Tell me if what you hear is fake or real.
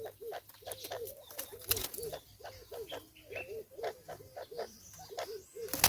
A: real